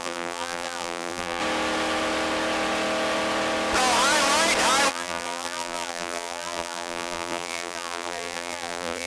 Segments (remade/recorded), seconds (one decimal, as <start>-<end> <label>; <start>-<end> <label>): 0.0-1.4 remade; 1.4-4.9 recorded; 4.9-9.1 remade